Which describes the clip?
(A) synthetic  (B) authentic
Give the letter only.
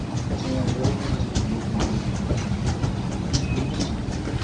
B